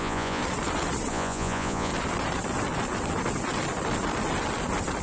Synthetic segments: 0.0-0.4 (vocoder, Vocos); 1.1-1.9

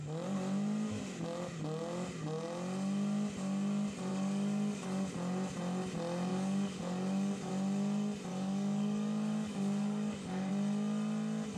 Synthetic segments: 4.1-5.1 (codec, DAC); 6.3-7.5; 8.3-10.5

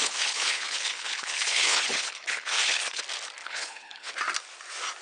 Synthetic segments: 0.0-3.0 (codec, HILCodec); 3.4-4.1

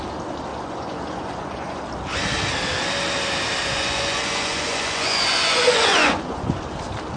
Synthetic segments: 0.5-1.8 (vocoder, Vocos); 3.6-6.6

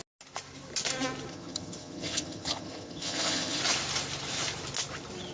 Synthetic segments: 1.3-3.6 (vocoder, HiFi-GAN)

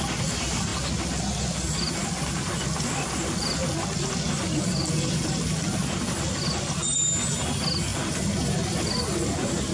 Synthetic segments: none

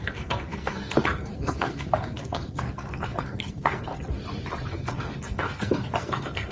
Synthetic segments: 0.0-3.9 (codec, SNAC); 4.7-6.5

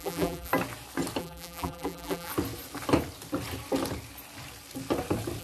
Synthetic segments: 0.0-0.5 (vocoder, BigVGAN v2); 1.2-2.3